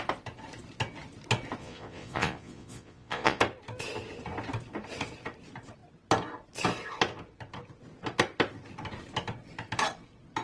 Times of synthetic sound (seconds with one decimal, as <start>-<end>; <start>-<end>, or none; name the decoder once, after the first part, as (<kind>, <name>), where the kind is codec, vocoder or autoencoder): 1.6-3.4 (vocoder, Vocos)